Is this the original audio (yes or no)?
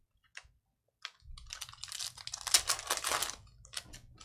yes